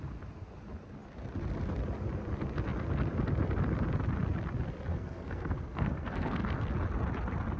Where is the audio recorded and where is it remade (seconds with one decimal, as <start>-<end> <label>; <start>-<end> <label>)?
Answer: 0.0-4.9 recorded; 4.9-6.7 remade; 6.7-7.6 recorded